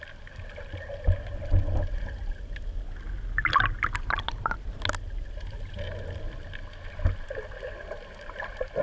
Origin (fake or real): real